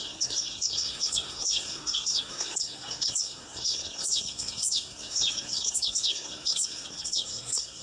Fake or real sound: fake